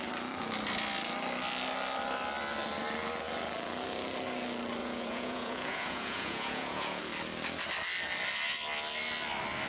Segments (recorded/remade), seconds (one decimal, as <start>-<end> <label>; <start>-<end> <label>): 0.0-4.8 recorded; 4.8-7.0 remade; 7.0-9.7 recorded